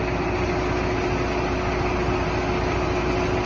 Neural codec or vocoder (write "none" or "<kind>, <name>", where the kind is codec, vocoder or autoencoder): none